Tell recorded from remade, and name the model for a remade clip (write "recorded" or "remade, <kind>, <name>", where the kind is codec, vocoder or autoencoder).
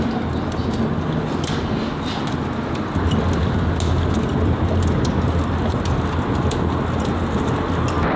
recorded